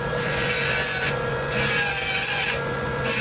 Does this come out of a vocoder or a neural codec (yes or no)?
yes